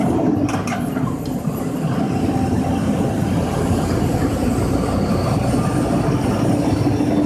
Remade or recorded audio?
recorded